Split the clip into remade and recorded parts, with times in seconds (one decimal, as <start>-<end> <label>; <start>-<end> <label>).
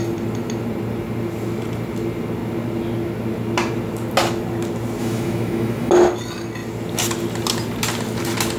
0.0-5.0 recorded; 5.0-5.9 remade; 5.9-8.6 recorded